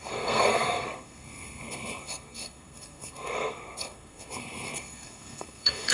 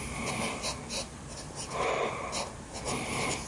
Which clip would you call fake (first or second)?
first